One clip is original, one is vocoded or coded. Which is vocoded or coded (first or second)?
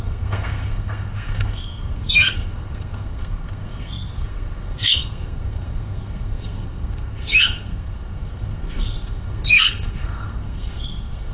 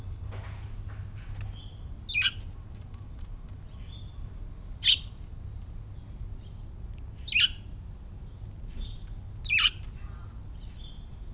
first